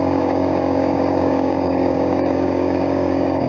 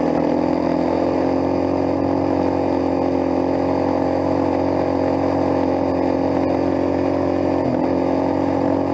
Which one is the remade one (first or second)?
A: first